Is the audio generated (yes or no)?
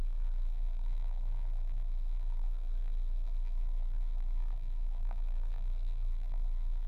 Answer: yes